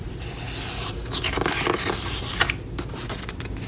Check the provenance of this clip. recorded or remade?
recorded